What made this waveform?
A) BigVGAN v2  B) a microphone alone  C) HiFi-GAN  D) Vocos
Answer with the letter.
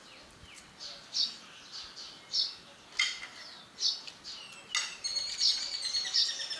B